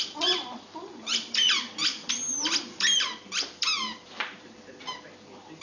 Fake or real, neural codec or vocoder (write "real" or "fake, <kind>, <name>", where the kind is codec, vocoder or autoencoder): fake, vocoder, BigVGAN v2